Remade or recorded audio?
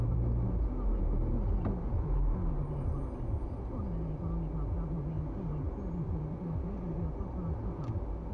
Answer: recorded